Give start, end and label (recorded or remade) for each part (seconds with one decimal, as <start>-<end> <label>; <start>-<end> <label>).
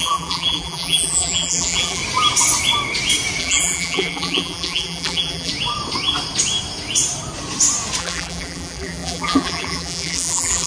0.0-2.0 remade; 2.0-3.4 recorded; 3.4-5.5 remade; 5.5-8.0 recorded; 8.0-10.7 remade